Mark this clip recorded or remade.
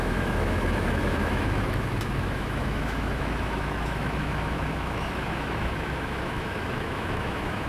remade